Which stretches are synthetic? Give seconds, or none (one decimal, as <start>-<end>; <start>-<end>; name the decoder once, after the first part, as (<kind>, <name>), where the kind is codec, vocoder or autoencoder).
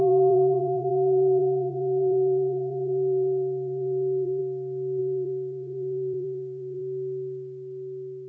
0.0-4.4 (vocoder, BigVGAN v2); 5.0-6.8